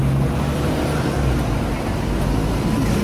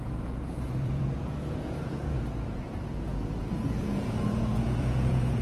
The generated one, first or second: second